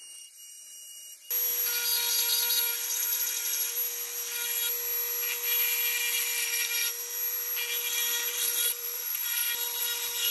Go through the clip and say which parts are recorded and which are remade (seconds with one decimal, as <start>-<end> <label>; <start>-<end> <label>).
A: 0.0-0.5 recorded; 0.5-1.3 remade; 1.3-8.3 recorded; 8.3-9.8 remade; 9.8-10.3 recorded